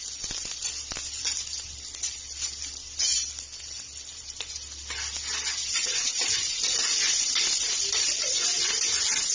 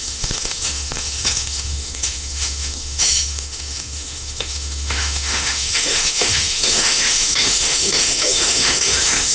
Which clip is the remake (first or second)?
second